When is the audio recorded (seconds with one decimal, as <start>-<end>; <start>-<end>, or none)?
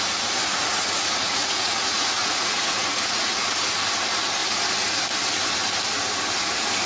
0.0-0.4; 3.5-6.9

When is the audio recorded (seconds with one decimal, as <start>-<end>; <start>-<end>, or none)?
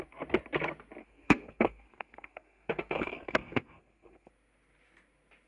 0.0-1.0; 4.3-5.5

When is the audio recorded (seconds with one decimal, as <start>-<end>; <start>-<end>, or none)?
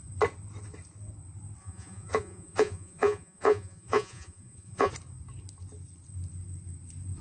0.0-1.6; 4.9-7.2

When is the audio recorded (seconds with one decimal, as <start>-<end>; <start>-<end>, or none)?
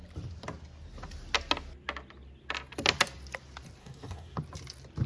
0.0-3.8; 4.4-5.1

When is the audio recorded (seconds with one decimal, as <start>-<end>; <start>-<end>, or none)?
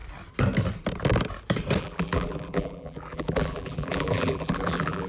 0.0-1.8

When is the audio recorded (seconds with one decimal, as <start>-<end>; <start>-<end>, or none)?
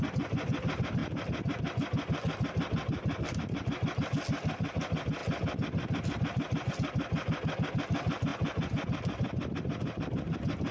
0.0-10.7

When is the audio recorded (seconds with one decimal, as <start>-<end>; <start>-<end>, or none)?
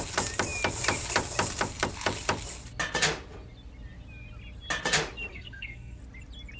0.0-5.3; 6.0-6.6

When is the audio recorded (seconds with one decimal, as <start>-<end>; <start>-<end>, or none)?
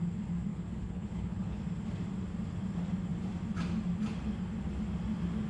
0.0-0.5; 1.6-5.5